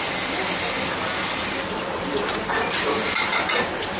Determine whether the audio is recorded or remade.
recorded